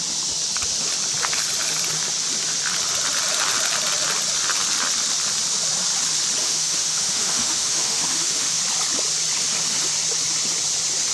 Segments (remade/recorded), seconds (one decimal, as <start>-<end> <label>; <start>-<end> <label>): 0.0-6.4 recorded; 6.4-8.6 remade; 8.6-11.1 recorded